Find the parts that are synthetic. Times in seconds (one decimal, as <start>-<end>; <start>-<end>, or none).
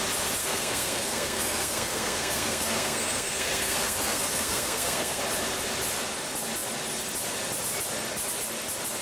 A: 0.4-5.2